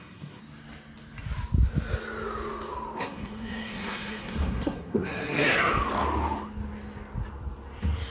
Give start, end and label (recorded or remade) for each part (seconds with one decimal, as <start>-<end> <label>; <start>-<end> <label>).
0.0-0.4 remade; 0.4-3.0 recorded; 3.0-5.7 remade; 5.7-8.1 recorded